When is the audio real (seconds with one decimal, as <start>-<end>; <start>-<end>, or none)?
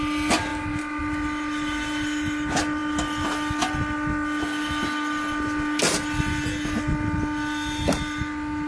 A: 0.0-8.7